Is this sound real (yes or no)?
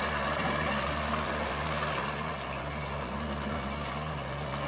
no